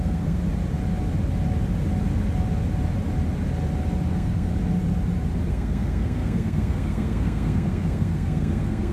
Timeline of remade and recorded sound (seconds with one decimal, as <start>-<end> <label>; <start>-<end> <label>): 0.0-0.4 remade; 0.4-4.1 recorded; 4.1-4.5 remade; 4.5-5.5 recorded; 5.5-8.9 remade